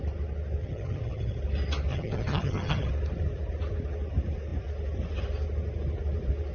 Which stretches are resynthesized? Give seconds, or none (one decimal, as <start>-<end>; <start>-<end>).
0.6-1.4; 1.9-2.9